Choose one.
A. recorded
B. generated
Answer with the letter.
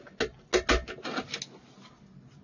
A